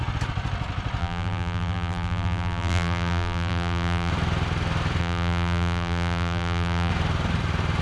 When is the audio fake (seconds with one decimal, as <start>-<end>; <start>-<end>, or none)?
1.0-4.1; 5.0-6.9